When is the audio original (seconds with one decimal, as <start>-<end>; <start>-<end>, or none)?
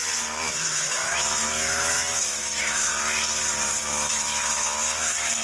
0.0-0.5; 2.9-3.8